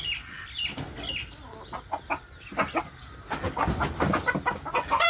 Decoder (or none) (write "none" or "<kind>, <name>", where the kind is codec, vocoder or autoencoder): none